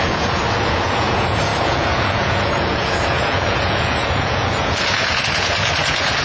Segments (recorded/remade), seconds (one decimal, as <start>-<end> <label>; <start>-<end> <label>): 0.0-6.2 remade